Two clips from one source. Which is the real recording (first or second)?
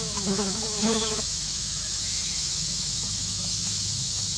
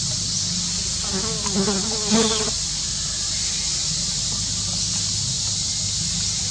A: second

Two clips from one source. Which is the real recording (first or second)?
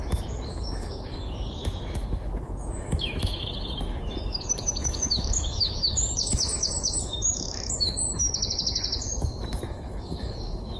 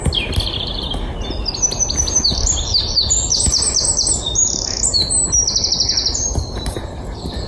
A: second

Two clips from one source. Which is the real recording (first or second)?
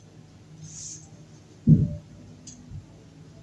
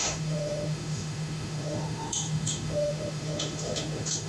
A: first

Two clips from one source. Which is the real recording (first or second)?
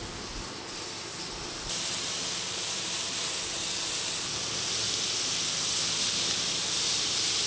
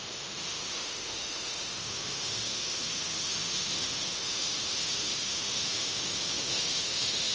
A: first